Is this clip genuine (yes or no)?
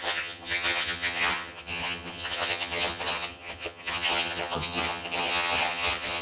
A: no